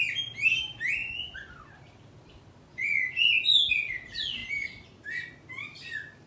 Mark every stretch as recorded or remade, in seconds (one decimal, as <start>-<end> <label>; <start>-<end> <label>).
0.0-1.0 recorded; 1.0-1.6 remade; 1.6-2.7 recorded; 2.7-3.5 remade; 3.5-6.3 recorded